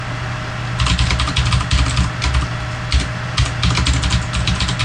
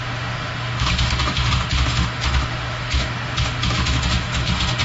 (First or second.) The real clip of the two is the first